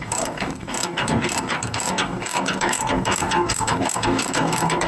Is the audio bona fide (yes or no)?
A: no